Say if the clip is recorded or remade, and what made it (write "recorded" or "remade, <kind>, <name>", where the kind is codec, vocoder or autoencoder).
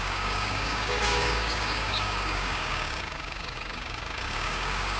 remade, codec, DAC